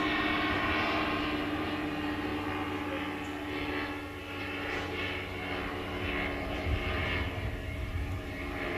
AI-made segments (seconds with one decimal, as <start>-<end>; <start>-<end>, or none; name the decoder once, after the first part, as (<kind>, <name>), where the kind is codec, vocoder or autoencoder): 0.0-2.3 (vocoder, BigVGAN v2); 4.4-5.0; 6.4-8.8